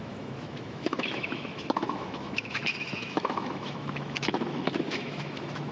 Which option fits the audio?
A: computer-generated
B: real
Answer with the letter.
A